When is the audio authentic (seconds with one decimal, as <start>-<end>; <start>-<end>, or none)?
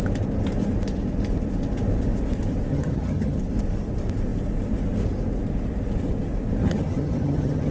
0.0-2.7; 3.4-6.6